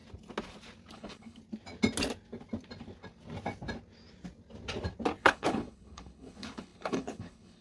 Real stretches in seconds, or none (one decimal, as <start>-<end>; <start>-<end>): 0.0-0.9; 1.4-5.2